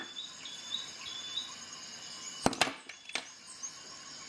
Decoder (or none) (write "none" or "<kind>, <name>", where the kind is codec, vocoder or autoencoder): none